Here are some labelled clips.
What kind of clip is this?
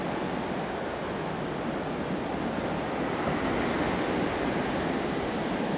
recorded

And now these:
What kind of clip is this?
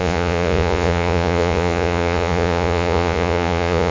remade